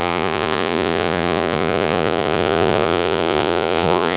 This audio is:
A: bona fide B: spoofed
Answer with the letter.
B